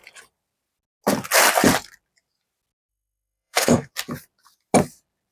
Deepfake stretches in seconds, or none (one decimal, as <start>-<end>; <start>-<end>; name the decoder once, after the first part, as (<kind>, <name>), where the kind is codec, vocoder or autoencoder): 2.9-3.9 (autoencoder, DAC-VAE)

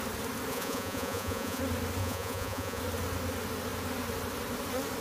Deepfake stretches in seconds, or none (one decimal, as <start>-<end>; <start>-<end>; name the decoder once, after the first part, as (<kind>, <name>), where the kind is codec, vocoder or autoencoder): 0.5-1.6 (vocoder, Vocos); 2.0-2.8

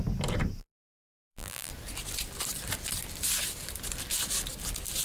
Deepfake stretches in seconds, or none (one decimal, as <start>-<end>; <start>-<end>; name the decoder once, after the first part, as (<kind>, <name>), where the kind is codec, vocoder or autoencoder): 0.6-1.7 (vocoder, BigVGAN v2)